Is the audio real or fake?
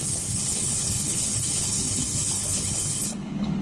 fake